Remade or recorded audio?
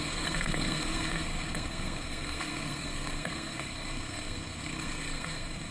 remade